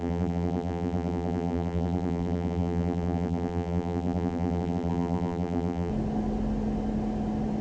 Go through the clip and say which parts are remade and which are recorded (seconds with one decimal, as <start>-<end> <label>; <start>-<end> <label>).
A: 0.0-5.9 remade; 5.9-7.6 recorded